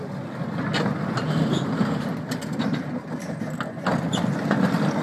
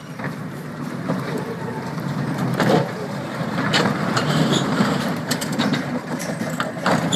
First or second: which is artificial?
second